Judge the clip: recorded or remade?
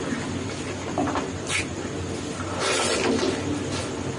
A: recorded